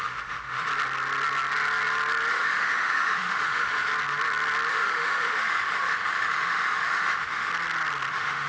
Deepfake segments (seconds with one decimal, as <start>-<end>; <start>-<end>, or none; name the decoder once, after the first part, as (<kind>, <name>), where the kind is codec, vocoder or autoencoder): 0.0-0.7 (autoencoder, DAC-VAE); 2.3-3.9; 4.7-7.5; 8.1-8.5